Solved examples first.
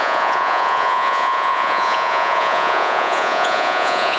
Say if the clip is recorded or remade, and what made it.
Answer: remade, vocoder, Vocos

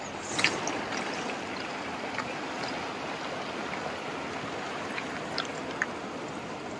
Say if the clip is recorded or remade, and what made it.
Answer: recorded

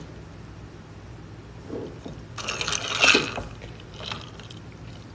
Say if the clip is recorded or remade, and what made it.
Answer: recorded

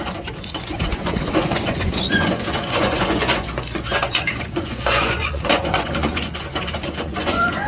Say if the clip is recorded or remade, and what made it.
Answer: remade, vocoder, Vocos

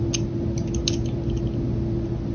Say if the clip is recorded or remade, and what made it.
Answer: recorded